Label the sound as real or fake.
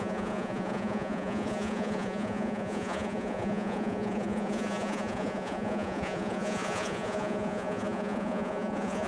fake